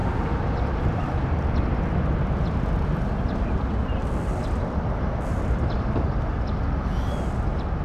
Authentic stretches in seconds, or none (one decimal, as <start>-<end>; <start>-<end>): 2.2-7.8